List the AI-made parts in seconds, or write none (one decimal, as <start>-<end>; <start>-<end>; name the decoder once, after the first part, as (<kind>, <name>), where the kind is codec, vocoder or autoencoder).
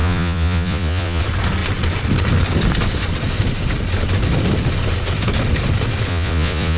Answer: 0.0-1.2 (vocoder, Vocos); 6.1-6.8